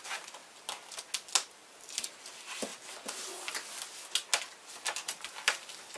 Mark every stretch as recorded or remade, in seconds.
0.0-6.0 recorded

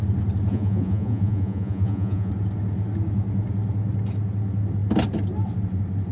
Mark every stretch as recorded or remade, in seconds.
0.0-0.5 recorded; 0.5-2.3 remade; 2.3-6.1 recorded

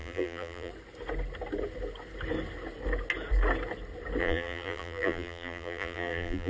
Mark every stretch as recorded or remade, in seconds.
0.0-0.7 remade; 0.7-4.2 recorded; 4.2-6.5 remade

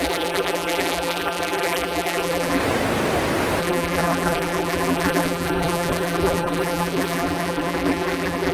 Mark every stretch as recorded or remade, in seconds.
0.0-2.6 remade; 2.6-3.6 recorded; 3.6-8.5 remade

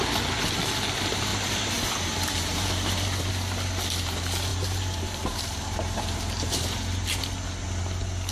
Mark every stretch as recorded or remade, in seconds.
0.0-1.3 recorded; 1.3-3.3 remade; 3.3-4.5 recorded; 4.5-7.2 remade; 7.2-8.3 recorded